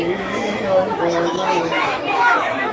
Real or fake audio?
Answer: fake